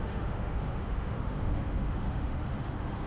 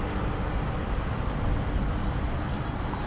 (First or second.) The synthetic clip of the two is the first